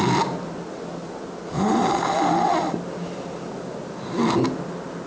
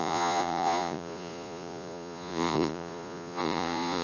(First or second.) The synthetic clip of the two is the second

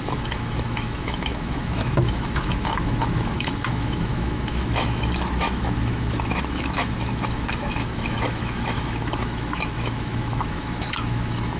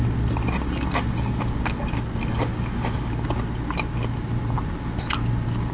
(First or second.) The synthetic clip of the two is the first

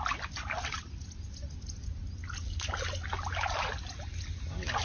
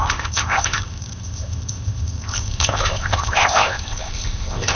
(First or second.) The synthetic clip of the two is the second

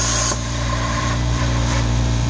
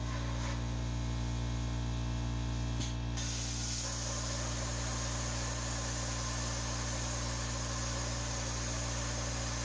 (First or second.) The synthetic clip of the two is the first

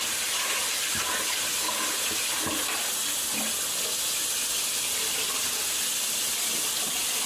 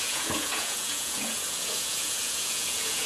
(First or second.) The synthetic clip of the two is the second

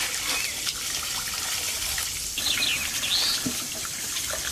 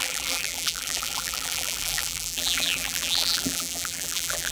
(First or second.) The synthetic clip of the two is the second